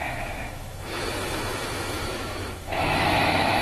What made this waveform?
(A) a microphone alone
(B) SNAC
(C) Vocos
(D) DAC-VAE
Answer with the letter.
D